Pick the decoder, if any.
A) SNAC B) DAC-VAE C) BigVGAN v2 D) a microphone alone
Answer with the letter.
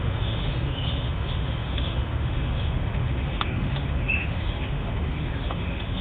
B